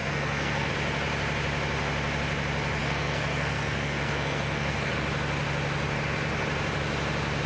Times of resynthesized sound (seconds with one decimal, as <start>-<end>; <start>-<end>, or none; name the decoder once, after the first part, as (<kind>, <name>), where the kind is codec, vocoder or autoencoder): 0.0-0.7 (codec, SNAC); 2.8-4.9